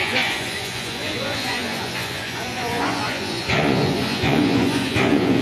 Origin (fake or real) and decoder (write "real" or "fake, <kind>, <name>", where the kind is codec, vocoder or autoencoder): fake, vocoder, Vocos